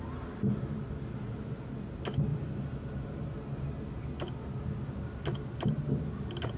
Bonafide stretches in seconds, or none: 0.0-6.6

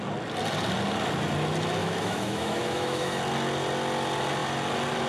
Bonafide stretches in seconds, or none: 0.0-1.8; 3.2-5.1

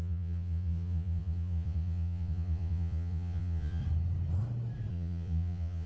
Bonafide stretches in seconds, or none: 3.8-4.9